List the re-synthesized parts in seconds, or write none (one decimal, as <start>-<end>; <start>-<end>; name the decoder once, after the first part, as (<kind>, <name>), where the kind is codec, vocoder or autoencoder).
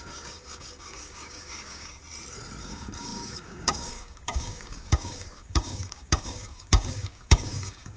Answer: 0.0-2.0 (codec, DAC); 2.6-8.0